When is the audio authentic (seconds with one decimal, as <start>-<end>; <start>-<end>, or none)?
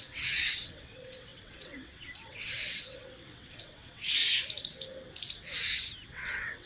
4.2-6.1